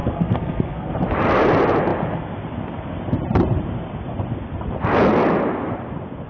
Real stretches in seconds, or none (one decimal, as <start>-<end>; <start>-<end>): 0.9-6.3